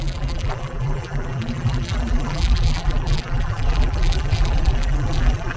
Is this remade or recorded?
remade